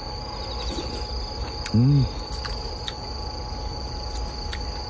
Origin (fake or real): real